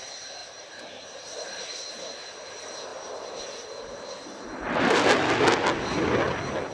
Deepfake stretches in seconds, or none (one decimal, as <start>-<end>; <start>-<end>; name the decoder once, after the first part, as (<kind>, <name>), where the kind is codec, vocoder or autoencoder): 0.4-1.6 (vocoder, BigVGAN v2); 2.9-3.4